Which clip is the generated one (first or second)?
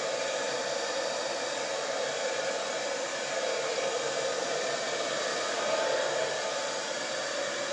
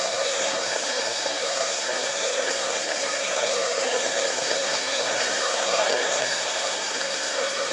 second